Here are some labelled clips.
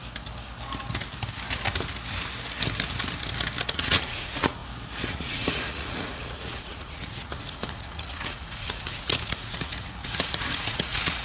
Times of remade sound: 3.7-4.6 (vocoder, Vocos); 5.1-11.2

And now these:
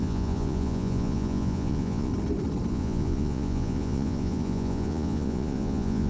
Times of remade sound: 0.0-2.1 (vocoder, Vocos); 2.7-6.1